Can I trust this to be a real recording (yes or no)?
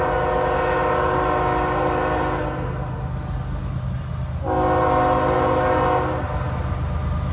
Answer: yes